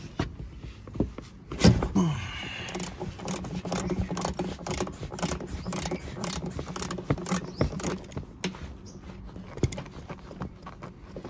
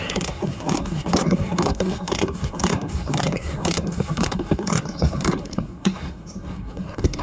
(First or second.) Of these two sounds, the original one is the first